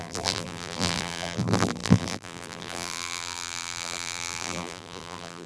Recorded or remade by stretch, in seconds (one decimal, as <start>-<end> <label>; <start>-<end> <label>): 0.0-5.5 remade

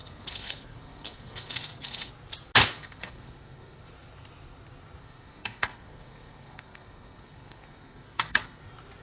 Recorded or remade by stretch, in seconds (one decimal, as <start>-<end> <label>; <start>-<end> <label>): 0.0-2.1 remade; 2.1-2.7 recorded; 2.7-3.8 remade; 3.8-5.0 recorded; 5.0-8.6 remade; 8.6-9.0 recorded

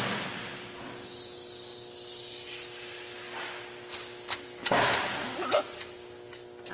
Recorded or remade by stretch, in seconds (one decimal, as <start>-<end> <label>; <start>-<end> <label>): 0.0-6.7 recorded

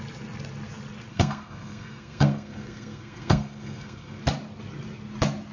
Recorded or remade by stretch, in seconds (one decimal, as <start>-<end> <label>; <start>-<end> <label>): 0.0-1.1 recorded; 1.1-4.2 remade; 4.2-5.5 recorded

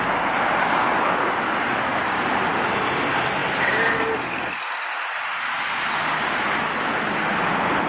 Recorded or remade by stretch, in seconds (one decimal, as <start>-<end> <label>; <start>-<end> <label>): 0.0-1.9 recorded; 1.9-2.7 remade; 2.7-7.9 recorded

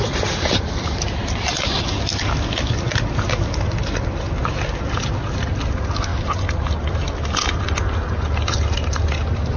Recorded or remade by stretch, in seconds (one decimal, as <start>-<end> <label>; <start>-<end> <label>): 0.0-9.6 recorded